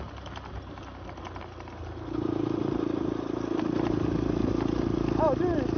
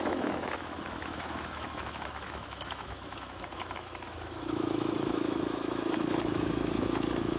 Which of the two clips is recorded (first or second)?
first